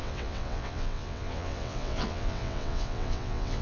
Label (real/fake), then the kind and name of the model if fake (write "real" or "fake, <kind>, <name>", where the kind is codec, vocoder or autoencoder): fake, vocoder, WaveNeXt